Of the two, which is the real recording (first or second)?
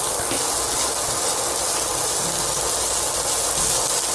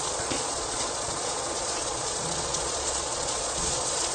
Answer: first